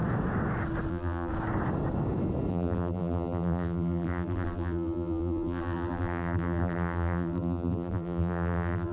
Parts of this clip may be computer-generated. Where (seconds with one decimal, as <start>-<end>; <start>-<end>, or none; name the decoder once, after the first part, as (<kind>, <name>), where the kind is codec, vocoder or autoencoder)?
0.9-1.3 (vocoder, BigVGAN v2); 2.5-8.9